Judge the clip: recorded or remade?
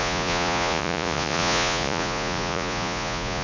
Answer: remade